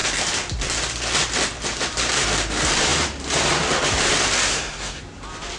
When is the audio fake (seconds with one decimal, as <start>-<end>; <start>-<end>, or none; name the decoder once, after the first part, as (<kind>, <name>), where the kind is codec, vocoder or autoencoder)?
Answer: 4.5-5.0 (codec, SNAC)